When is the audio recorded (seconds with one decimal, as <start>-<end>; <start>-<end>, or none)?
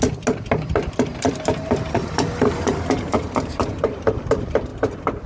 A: 0.0-1.1; 3.7-5.3